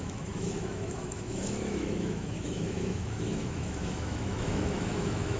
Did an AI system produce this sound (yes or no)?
yes